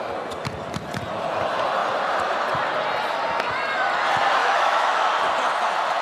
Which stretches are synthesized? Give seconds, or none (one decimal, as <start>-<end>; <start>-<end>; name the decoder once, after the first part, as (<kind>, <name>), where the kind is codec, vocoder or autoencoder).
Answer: 4.4-5.1 (autoencoder, DAC-VAE)